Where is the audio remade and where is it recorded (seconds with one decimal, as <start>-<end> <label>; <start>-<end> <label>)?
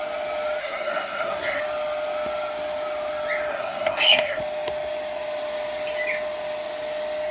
0.0-0.6 recorded; 0.6-1.6 remade; 1.6-3.5 recorded; 3.5-4.4 remade; 4.4-7.3 recorded